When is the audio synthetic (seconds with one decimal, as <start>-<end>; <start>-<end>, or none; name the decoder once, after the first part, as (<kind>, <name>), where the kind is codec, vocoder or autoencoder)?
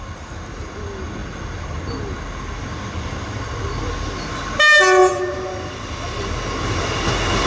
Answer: none